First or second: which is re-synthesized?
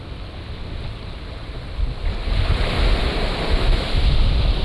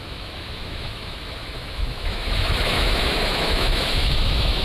second